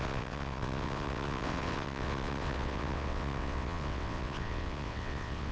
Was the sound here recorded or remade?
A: remade